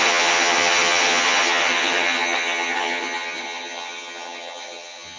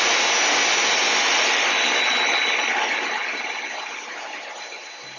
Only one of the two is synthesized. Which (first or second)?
first